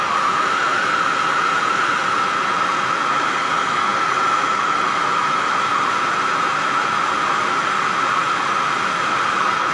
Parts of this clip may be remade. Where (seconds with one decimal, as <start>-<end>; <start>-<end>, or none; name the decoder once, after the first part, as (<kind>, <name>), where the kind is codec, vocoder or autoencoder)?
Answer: none